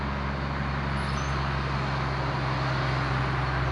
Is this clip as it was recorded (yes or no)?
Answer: yes